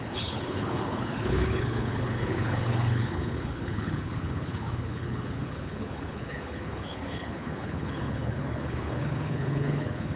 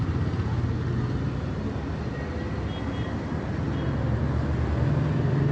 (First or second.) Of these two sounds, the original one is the second